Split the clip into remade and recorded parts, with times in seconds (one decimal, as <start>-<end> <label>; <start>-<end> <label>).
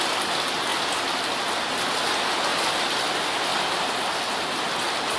0.0-0.7 recorded; 0.7-1.8 remade; 1.8-3.5 recorded; 3.5-4.7 remade; 4.7-5.2 recorded